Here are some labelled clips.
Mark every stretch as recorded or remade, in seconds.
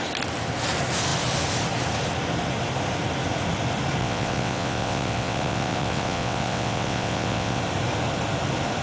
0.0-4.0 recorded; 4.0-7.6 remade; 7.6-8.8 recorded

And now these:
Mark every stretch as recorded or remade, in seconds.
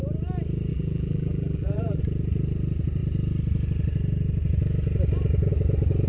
0.0-0.7 recorded; 0.7-2.0 remade; 2.0-6.1 recorded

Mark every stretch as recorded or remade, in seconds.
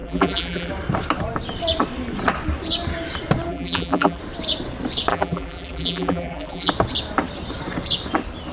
0.0-0.7 remade; 0.7-3.5 recorded; 3.5-4.2 remade; 4.2-5.1 recorded; 5.1-6.7 remade; 6.7-8.5 recorded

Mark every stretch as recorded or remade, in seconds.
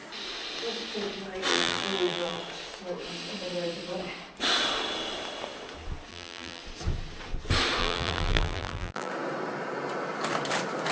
0.0-1.5 recorded; 1.5-2.4 remade; 2.4-6.1 recorded; 6.1-6.6 remade; 6.6-7.8 recorded; 7.8-9.1 remade; 9.1-10.9 recorded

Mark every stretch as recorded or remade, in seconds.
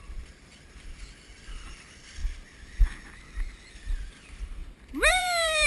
0.0-2.2 remade; 2.2-3.7 recorded; 3.7-4.6 remade; 4.6-5.1 recorded; 5.1-5.7 remade